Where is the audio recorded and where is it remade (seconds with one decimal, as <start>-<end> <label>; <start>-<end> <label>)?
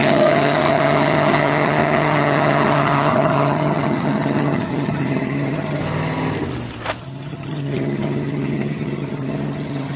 0.0-5.8 remade; 5.8-7.0 recorded; 7.0-10.0 remade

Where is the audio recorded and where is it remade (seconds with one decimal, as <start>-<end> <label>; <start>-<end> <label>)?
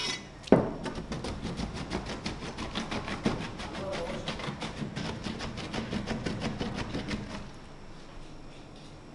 0.0-1.0 remade; 1.0-9.1 recorded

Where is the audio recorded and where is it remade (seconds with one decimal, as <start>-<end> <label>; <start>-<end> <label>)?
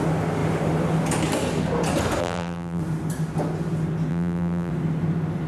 0.0-2.2 recorded; 2.2-2.8 remade; 2.8-4.1 recorded; 4.1-4.7 remade; 4.7-5.5 recorded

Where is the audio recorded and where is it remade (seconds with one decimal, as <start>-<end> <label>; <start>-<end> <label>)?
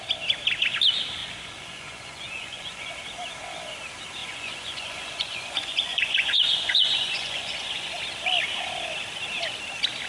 0.0-1.2 recorded; 1.2-2.9 remade; 2.9-4.2 recorded; 4.2-7.9 remade; 7.9-10.1 recorded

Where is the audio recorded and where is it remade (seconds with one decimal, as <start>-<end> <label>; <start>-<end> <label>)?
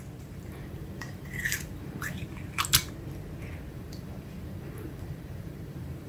0.0-2.2 remade; 2.2-3.7 recorded; 3.7-6.1 remade